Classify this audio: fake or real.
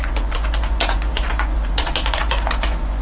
fake